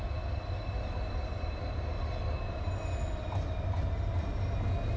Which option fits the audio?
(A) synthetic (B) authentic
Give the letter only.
B